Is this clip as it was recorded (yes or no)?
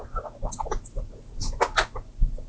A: yes